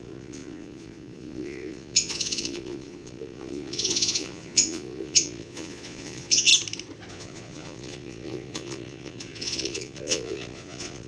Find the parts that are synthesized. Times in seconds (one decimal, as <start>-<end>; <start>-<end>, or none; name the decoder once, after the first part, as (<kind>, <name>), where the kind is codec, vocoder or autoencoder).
0.0-6.5 (vocoder, Vocos); 7.1-11.1